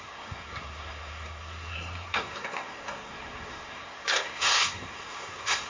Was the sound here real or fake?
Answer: fake